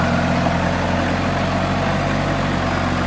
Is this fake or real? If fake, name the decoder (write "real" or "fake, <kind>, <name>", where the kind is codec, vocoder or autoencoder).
real